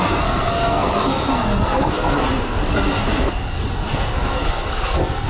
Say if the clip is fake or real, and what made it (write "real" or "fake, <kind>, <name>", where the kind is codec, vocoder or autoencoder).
fake, codec, SNAC